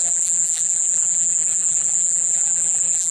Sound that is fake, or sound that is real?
fake